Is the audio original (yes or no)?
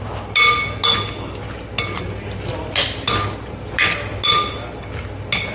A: yes